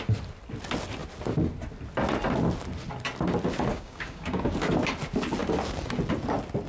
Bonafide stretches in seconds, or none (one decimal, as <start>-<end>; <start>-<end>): 0.0-3.7; 4.4-6.7